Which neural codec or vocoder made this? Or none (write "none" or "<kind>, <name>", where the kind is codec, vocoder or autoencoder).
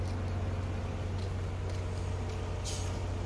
none